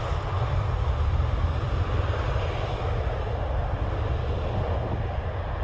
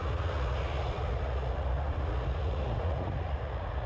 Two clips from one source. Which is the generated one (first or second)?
second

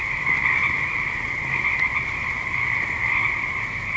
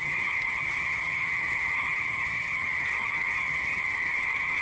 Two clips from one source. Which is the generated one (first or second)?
second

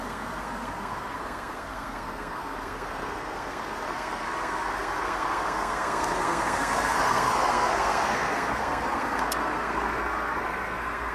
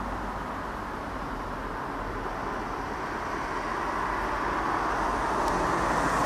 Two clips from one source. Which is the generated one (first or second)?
first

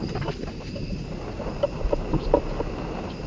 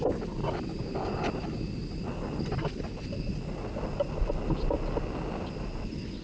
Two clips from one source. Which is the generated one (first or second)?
first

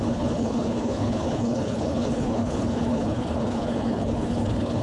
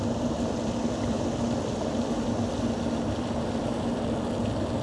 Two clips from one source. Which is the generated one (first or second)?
first